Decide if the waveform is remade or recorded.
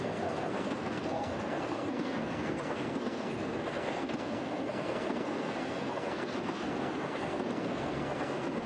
remade